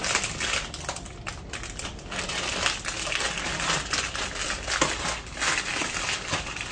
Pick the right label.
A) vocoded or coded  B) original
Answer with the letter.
B